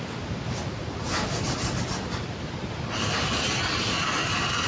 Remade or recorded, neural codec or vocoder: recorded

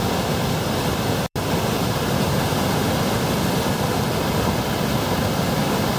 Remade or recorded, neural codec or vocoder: recorded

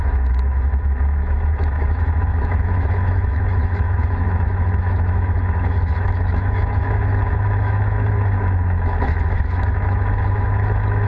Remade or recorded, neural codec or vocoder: remade, autoencoder, DAC-VAE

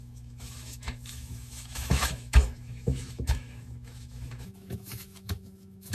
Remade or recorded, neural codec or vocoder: remade, autoencoder, DAC-VAE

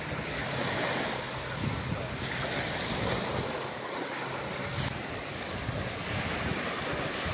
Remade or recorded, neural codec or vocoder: recorded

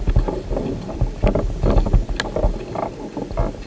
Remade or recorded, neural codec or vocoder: recorded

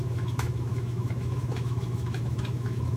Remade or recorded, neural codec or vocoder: remade, autoencoder, DAC-VAE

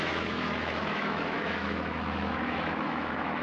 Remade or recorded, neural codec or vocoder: remade, autoencoder, DAC-VAE